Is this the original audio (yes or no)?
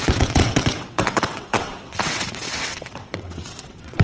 no